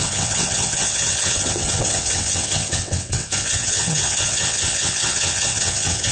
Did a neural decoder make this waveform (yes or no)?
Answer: yes